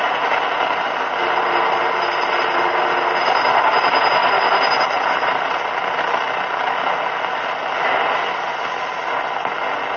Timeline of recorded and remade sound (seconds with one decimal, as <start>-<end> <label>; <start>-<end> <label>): 0.0-10.0 recorded